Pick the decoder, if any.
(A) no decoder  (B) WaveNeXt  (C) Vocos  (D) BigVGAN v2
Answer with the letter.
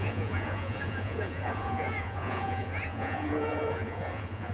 C